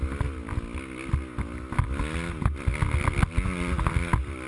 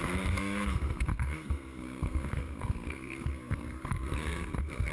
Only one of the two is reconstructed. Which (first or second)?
second